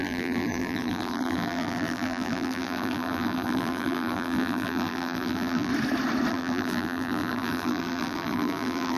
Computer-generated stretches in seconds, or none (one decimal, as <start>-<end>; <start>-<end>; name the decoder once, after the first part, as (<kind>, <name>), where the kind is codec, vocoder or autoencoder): 0.0-5.7 (vocoder, BigVGAN v2); 6.3-9.0